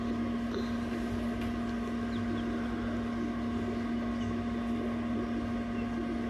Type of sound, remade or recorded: recorded